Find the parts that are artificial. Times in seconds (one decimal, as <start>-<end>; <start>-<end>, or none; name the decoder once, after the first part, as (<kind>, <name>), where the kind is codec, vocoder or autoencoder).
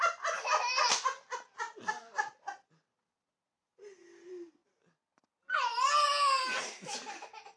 none